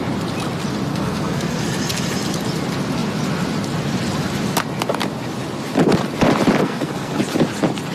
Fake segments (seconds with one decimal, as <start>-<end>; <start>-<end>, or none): 0.9-1.6; 6.6-7.2